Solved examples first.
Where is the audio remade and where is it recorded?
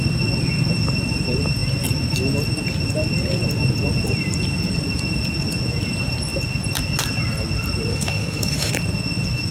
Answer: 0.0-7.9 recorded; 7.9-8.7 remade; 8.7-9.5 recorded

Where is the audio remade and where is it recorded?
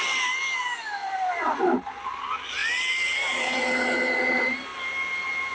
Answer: 0.0-5.5 recorded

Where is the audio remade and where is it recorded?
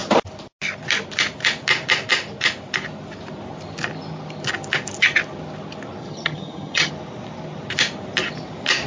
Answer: 0.0-6.0 recorded; 6.0-6.9 remade; 6.9-8.9 recorded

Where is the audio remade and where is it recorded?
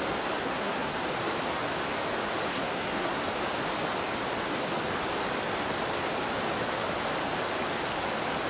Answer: 0.0-0.4 recorded; 0.4-0.9 remade; 0.9-2.5 recorded; 2.5-3.2 remade; 3.2-8.5 recorded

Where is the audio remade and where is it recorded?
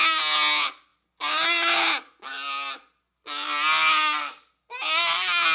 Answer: 0.0-5.5 recorded